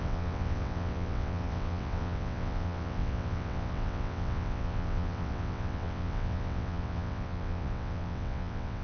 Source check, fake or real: fake